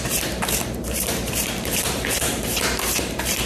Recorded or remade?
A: remade